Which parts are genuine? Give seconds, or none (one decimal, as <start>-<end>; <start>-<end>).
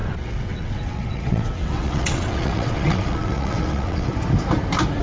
4.1-5.0